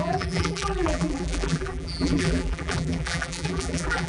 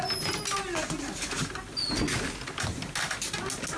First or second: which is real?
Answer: second